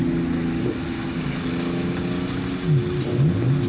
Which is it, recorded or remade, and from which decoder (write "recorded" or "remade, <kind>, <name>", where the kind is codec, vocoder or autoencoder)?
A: recorded